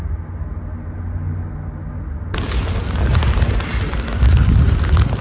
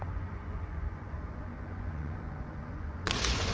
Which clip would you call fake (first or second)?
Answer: second